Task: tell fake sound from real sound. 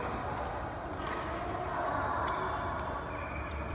real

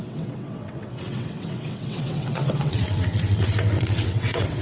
fake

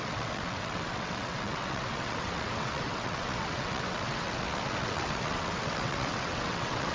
fake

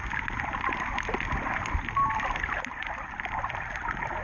real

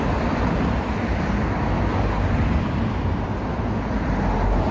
real